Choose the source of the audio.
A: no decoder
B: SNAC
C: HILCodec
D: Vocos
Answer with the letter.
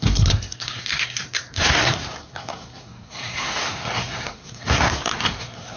B